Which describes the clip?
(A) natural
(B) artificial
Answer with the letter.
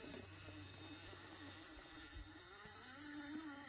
A